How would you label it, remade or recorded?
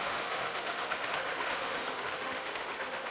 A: remade